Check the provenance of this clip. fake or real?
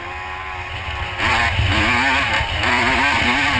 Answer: real